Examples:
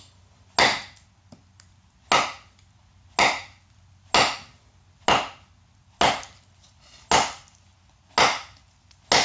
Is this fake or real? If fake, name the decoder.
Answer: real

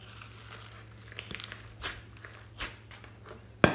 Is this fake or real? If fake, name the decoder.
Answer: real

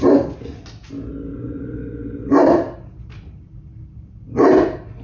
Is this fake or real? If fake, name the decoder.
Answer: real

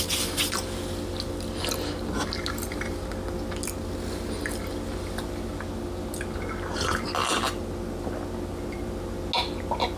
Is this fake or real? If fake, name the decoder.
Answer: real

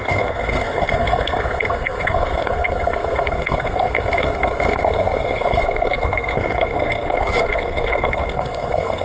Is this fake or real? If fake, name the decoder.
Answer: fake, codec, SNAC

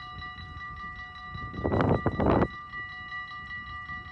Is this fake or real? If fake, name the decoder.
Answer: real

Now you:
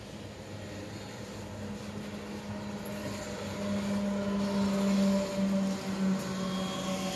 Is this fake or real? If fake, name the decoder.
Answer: real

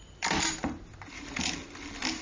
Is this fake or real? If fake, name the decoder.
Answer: fake, vocoder, BigVGAN v2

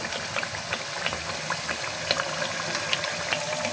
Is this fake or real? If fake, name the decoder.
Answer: real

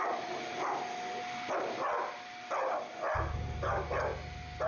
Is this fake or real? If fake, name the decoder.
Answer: real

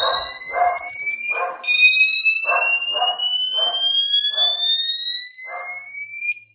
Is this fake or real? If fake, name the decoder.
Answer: real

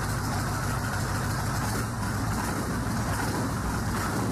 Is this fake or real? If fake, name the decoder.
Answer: real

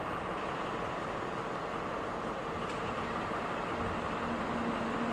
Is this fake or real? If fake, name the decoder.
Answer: real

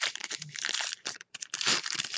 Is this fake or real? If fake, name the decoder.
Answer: fake, vocoder, BigVGAN v2